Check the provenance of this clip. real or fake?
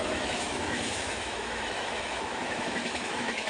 fake